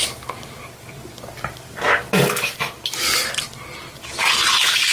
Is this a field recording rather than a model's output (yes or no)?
yes